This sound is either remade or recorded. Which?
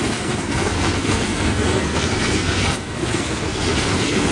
remade